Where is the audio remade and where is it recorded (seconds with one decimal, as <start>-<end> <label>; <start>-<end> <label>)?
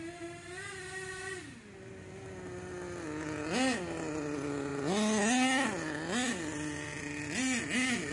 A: 0.0-8.1 recorded